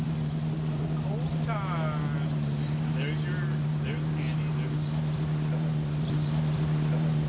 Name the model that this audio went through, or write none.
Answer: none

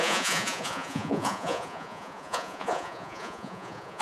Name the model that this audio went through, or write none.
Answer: vocoder, Vocos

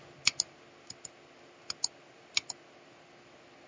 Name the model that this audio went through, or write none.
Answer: none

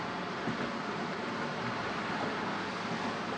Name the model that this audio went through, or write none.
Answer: none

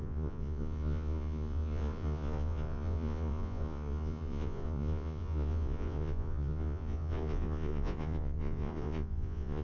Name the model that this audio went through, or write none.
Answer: vocoder, Vocos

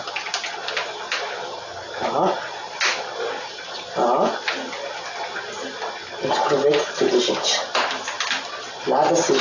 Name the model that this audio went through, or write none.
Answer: none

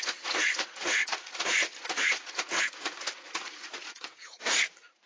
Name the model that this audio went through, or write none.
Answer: vocoder, Vocos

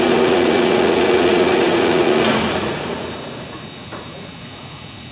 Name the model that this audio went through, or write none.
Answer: vocoder, Vocos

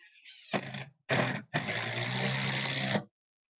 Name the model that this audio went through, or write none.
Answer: none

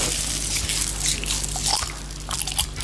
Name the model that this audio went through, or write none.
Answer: none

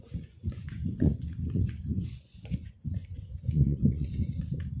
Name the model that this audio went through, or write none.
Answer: vocoder, Vocos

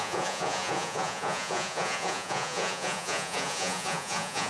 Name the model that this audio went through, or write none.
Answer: vocoder, Vocos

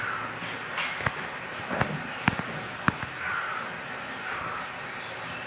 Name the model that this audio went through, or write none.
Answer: none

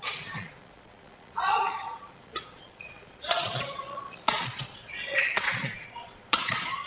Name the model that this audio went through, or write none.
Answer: vocoder, Vocos